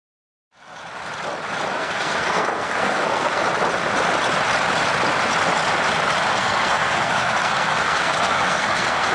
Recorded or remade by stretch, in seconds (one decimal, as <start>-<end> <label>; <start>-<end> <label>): 0.0-0.8 remade; 0.8-1.7 recorded; 1.7-3.4 remade; 3.4-6.3 recorded; 6.3-9.1 remade